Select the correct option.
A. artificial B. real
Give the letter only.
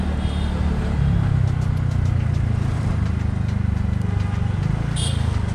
B